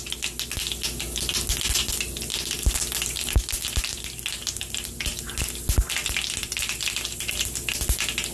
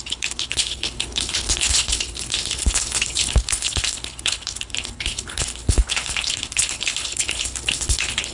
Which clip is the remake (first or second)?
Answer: second